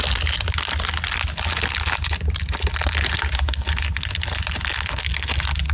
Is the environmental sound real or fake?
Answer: real